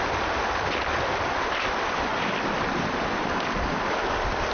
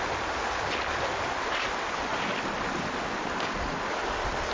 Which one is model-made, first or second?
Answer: first